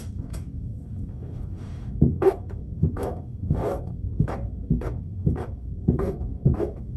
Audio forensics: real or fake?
fake